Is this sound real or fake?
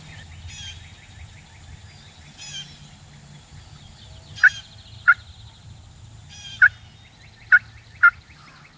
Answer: real